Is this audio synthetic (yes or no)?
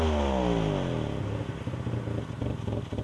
no